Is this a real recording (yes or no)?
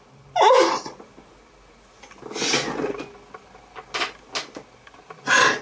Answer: yes